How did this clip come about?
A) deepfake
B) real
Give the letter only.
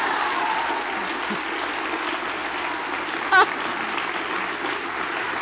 B